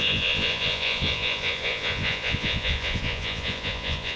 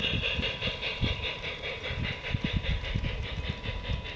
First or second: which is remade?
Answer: first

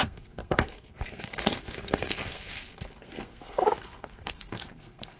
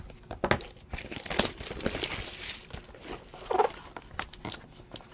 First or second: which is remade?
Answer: first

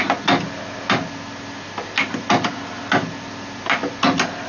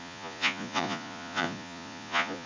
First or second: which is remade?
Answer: second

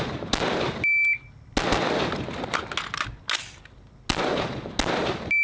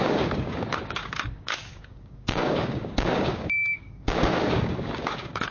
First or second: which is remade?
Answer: second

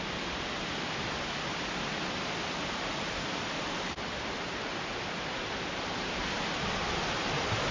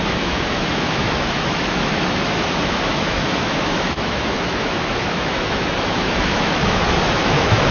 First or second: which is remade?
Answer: second